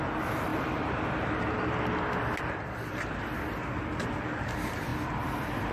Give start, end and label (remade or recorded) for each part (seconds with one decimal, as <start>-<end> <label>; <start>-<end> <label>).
0.0-5.7 recorded